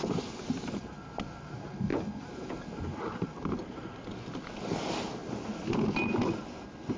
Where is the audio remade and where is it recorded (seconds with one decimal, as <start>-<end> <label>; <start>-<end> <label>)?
0.0-7.0 recorded